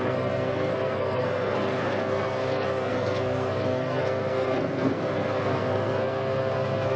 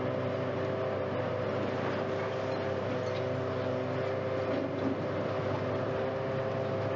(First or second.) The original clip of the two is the second